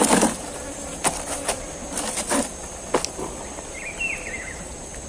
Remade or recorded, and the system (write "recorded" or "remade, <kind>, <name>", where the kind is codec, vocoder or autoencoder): recorded